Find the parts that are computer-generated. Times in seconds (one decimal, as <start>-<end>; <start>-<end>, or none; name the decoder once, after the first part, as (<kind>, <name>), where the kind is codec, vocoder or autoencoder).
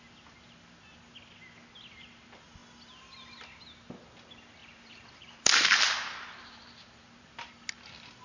4.6-7.3 (vocoder, BigVGAN v2)